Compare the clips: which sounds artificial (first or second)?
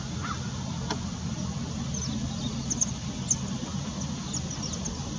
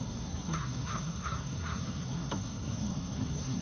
second